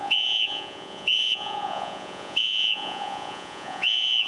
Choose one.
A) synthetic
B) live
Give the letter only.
A